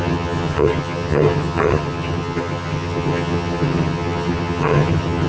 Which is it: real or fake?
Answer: fake